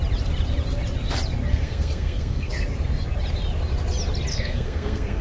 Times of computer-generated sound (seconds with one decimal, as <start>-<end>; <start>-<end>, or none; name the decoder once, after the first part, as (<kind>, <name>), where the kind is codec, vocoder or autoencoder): 1.5-2.5 (codec, SNAC); 4.3-5.2